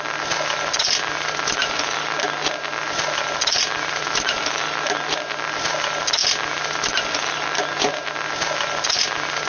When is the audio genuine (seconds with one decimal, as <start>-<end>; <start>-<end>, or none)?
0.0-9.5